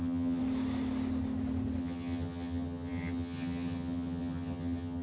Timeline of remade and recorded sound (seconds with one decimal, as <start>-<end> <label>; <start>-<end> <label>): 0.0-0.4 remade; 0.4-1.8 recorded; 1.8-5.0 remade